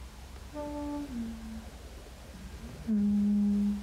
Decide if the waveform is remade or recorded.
recorded